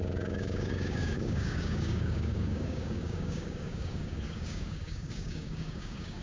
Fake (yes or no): yes